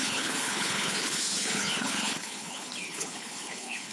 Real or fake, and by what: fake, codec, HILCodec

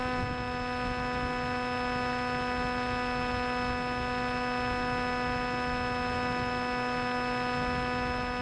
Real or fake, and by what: real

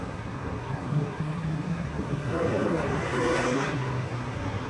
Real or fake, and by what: fake, codec, SNAC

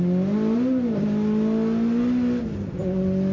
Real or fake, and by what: real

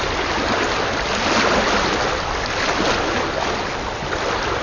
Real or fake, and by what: real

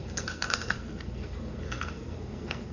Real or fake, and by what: fake, codec, SNAC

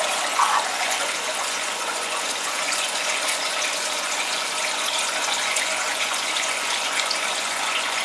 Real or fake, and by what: fake, vocoder, Vocos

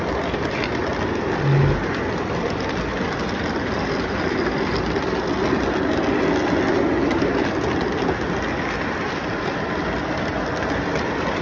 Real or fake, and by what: real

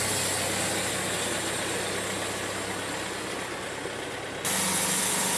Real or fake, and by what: real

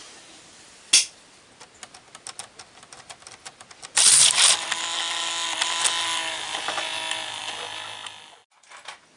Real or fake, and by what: real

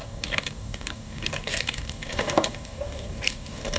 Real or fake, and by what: fake, codec, DAC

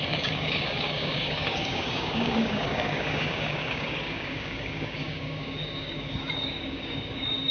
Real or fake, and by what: fake, codec, DAC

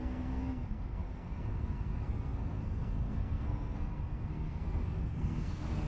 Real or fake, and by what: fake, codec, SNAC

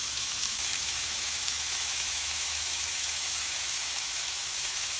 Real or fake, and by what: fake, autoencoder, DAC-VAE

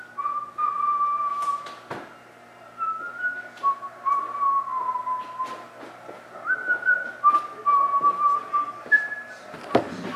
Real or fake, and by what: real